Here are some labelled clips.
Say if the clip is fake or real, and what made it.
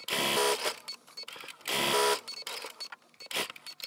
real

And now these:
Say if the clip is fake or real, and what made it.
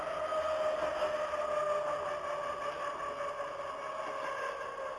real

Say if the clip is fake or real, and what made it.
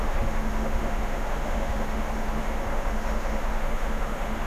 fake, autoencoder, DAC-VAE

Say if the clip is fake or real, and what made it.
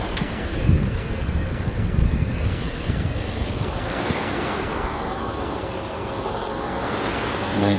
fake, codec, SNAC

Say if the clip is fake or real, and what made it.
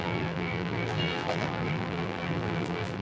fake, vocoder, BigVGAN v2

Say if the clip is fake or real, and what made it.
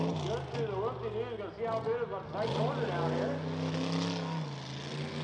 real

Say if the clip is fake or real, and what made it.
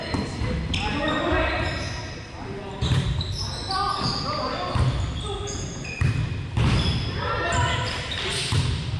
real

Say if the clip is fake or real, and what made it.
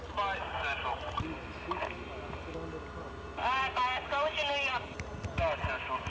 real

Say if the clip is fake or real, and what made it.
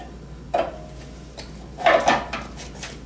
real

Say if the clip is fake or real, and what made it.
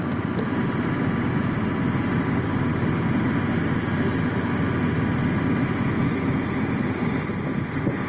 real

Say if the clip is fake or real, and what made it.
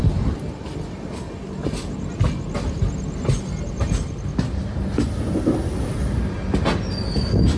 real